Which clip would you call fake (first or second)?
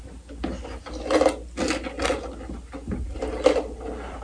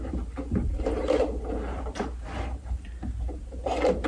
second